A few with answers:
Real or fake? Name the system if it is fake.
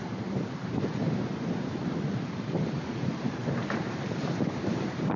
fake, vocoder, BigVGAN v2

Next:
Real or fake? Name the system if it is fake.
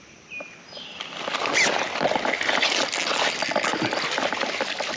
real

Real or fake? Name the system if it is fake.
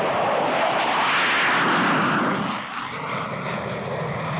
real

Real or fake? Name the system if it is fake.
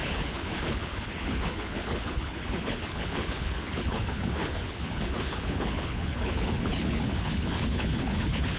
fake, codec, HILCodec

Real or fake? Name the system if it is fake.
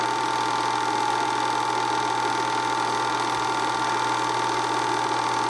real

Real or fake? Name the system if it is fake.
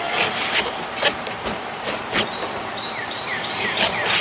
fake, vocoder, BigVGAN v2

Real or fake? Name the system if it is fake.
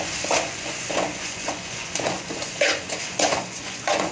fake, vocoder, Vocos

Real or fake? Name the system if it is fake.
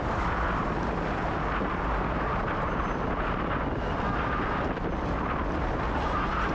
real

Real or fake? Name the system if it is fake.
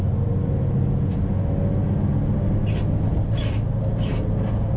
real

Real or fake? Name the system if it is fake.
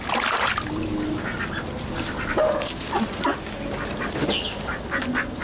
real